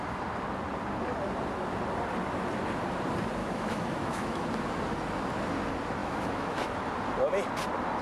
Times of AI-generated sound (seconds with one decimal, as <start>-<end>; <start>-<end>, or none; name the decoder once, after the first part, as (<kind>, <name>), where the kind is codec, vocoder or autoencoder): 3.4-4.4 (autoencoder, DAC-VAE); 6.0-6.7